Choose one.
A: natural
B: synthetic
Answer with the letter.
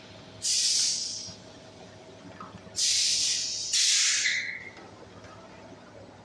A